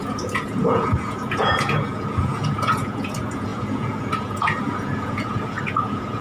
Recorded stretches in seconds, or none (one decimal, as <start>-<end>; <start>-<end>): none